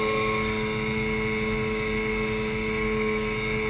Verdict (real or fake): real